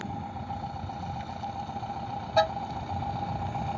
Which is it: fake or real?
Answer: real